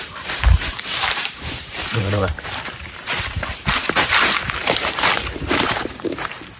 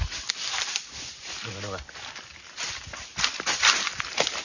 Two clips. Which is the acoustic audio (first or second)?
second